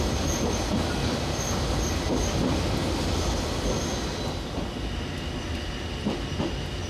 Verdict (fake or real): real